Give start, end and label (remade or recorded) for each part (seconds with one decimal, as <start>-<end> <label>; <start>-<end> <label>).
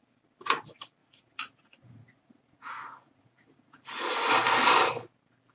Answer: 0.0-1.0 recorded; 1.0-4.3 remade; 4.3-5.5 recorded